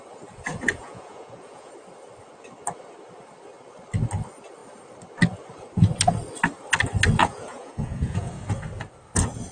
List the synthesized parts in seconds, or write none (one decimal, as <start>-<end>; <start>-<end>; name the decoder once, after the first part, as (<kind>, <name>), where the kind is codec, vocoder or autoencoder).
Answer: 0.5-1.7 (vocoder, Vocos); 7.2-8.3